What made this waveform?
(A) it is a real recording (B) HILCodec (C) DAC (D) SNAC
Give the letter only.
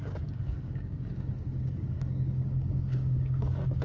C